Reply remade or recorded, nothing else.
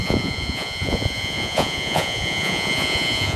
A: remade